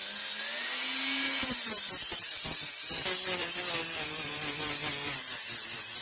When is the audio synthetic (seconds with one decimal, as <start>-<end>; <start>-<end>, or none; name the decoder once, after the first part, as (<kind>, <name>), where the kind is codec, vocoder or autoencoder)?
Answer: 3.4-6.0 (vocoder, BigVGAN v2)